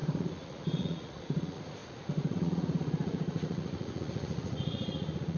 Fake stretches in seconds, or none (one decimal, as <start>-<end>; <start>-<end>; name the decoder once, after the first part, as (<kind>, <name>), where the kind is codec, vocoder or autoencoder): 0.0-5.4 (vocoder, Vocos)